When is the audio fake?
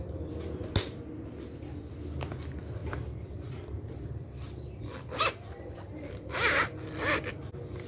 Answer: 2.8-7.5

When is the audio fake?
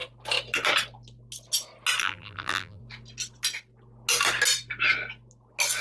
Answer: 2.0-2.8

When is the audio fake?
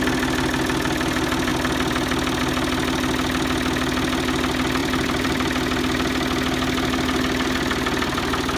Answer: 1.5-2.4; 4.8-5.8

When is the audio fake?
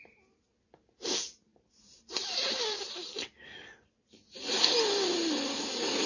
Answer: 1.5-3.1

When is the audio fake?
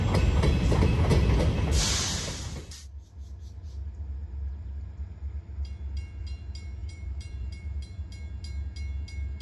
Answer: 6.8-8.0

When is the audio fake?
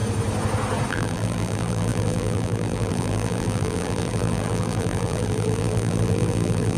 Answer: 0.9-6.8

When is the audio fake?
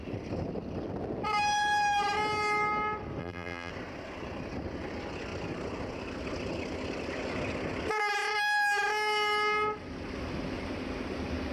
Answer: 3.2-3.7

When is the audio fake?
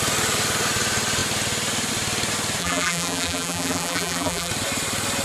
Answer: 2.6-4.5